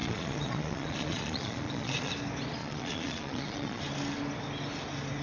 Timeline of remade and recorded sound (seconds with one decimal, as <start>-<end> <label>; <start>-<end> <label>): 0.0-2.1 remade; 2.1-2.6 recorded; 2.6-3.8 remade; 3.8-5.2 recorded